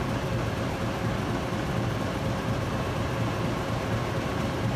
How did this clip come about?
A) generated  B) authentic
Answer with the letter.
B